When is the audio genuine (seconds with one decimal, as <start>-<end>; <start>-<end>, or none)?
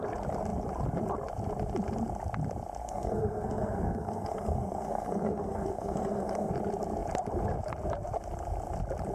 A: 0.0-2.8; 6.5-9.1